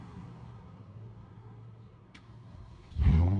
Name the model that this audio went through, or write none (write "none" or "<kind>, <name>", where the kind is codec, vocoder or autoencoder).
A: codec, SNAC